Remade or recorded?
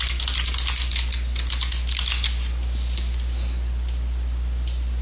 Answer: recorded